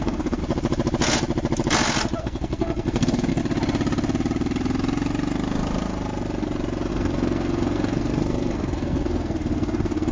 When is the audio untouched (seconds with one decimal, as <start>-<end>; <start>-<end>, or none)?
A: 0.4-2.2; 3.4-6.9